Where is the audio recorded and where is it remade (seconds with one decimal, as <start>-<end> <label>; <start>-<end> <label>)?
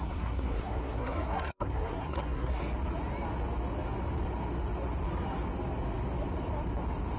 0.0-2.6 remade; 2.6-7.2 recorded